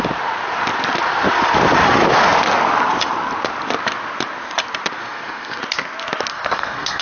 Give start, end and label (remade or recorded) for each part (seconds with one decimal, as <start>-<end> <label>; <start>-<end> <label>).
0.0-5.0 recorded; 5.0-5.6 remade; 5.6-6.3 recorded; 6.3-7.0 remade